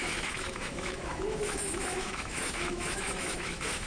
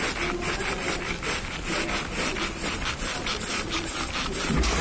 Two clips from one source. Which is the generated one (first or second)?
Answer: first